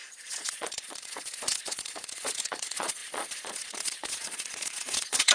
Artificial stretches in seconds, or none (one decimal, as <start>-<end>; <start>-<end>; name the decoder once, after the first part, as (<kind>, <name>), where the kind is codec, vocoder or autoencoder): 0.0-5.3 (vocoder, Vocos)